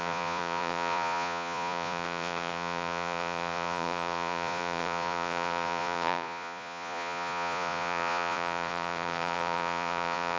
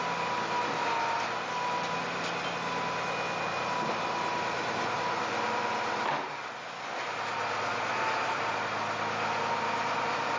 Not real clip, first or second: first